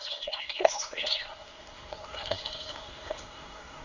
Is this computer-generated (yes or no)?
yes